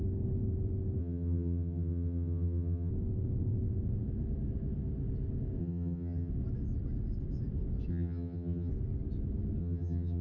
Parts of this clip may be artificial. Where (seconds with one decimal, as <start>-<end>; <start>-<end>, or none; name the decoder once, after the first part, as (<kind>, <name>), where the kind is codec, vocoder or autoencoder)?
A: 1.0-2.9 (vocoder, HiFi-GAN); 5.6-6.3; 7.9-8.7; 9.6-10.2